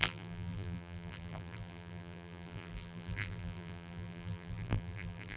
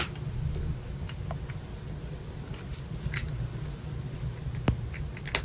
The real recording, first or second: second